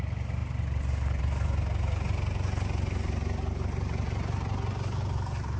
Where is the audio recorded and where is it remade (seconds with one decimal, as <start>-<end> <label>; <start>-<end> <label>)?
0.0-5.6 recorded